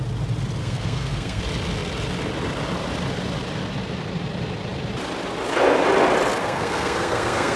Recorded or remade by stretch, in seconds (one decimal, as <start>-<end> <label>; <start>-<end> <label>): 0.0-0.6 recorded; 0.6-1.4 remade; 1.4-6.4 recorded; 6.4-7.6 remade